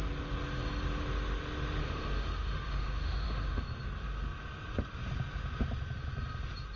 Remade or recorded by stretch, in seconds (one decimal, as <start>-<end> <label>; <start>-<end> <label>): 0.0-1.8 recorded; 1.8-3.6 remade; 3.6-6.8 recorded